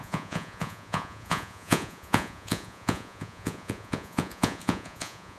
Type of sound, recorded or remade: remade